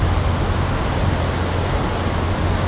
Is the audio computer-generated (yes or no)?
no